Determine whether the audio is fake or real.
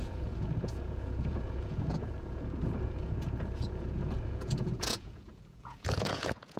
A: fake